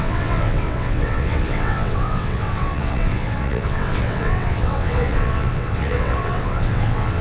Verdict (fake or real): fake